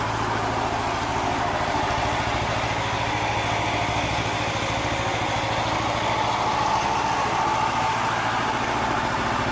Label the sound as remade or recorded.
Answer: recorded